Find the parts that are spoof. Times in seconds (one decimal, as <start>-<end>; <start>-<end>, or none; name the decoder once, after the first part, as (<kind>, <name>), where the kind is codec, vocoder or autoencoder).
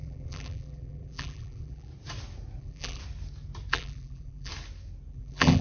0.0-1.9 (vocoder, BigVGAN v2); 2.6-3.0; 3.7-4.5; 5.1-5.6